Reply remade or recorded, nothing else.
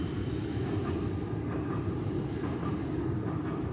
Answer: recorded